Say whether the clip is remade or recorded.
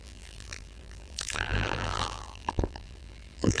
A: remade